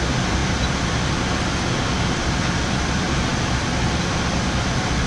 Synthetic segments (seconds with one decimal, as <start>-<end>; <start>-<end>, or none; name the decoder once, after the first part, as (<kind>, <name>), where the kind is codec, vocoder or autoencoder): none